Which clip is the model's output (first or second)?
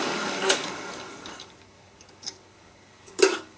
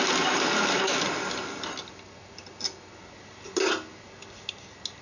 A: first